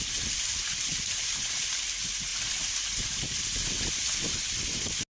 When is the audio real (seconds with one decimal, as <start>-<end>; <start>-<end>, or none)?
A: 0.0-5.1